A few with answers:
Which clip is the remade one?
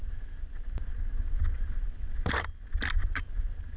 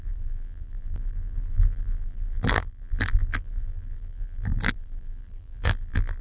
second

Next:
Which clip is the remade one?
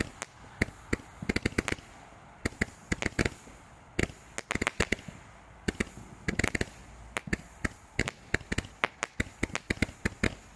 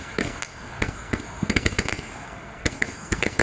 second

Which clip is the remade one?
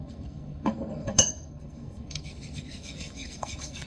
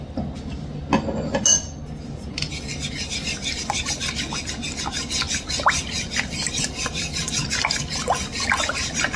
first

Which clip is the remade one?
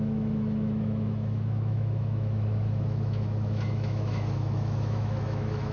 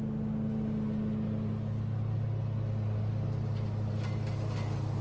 first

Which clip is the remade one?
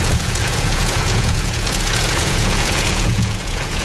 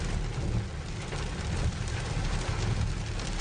first